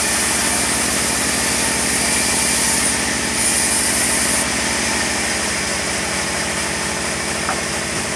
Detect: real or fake real